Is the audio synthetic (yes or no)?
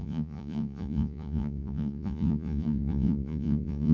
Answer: yes